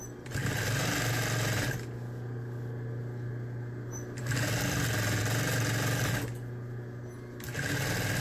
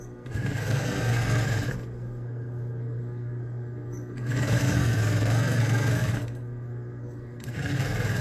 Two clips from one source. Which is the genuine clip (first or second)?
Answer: first